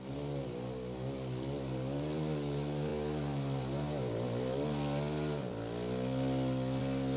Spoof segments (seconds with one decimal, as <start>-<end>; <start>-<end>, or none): none